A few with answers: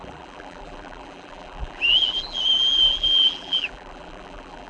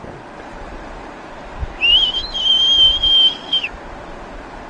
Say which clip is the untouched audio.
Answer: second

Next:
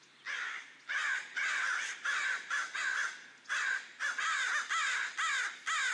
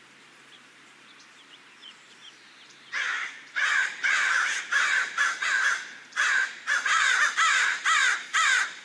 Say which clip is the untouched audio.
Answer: first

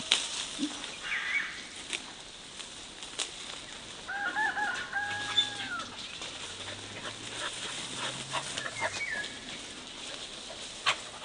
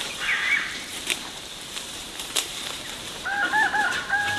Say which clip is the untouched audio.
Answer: first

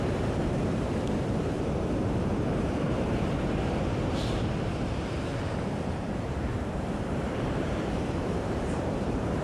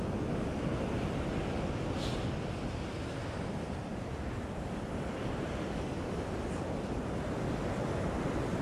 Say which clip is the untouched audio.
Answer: second